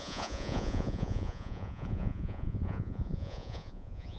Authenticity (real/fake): fake